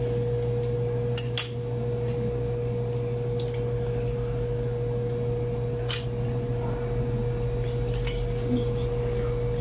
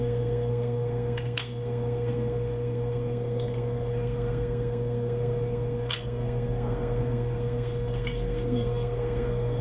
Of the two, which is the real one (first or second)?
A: first